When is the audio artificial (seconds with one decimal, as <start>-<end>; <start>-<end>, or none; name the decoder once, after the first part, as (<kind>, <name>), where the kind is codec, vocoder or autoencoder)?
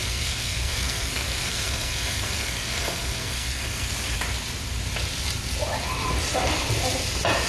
0.0-3.9 (codec, SNAC)